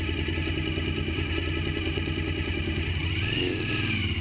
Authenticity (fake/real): real